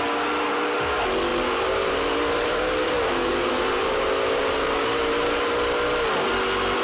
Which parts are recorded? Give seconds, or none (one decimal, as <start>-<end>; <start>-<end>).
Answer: 0.0-1.3; 5.4-6.8